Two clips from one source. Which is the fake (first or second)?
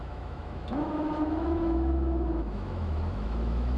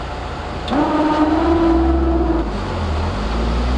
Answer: first